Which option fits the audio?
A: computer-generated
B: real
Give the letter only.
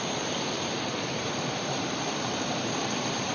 A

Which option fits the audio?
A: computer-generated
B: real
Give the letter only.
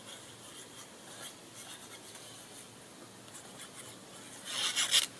B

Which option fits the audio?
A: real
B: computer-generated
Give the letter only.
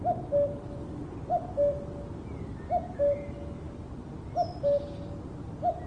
A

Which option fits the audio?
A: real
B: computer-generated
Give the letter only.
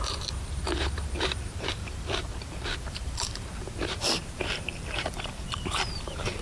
B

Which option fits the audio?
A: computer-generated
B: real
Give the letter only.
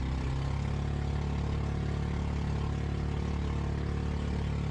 B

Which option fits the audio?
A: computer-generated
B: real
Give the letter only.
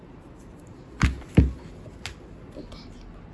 B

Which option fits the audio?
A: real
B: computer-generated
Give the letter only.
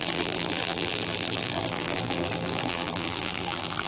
B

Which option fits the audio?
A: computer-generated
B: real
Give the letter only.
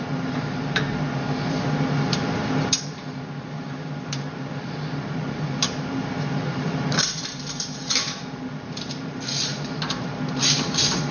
A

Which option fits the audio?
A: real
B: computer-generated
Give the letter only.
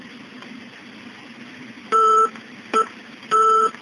B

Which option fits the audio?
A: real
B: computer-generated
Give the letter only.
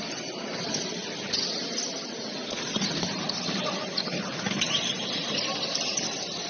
B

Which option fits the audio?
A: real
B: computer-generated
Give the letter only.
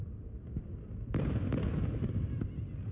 A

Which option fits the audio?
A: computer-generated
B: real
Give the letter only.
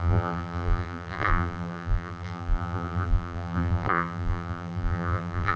A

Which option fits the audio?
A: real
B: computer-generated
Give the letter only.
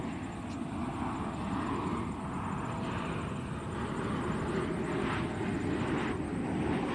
A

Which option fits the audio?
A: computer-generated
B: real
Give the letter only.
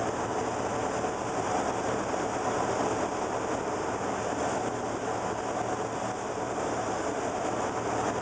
B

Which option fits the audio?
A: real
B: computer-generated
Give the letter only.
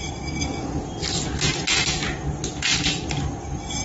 A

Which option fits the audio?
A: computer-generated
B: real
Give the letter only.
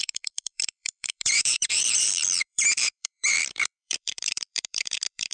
A